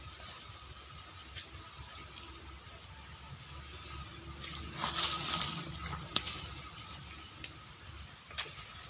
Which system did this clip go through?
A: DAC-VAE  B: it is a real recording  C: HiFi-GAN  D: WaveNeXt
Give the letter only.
B